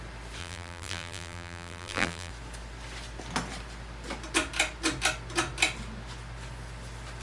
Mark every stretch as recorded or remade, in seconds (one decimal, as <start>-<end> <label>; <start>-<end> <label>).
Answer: 0.0-0.4 recorded; 0.4-2.3 remade; 2.3-7.2 recorded